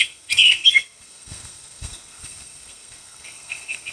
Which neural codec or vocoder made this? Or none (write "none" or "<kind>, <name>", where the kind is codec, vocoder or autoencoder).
codec, SNAC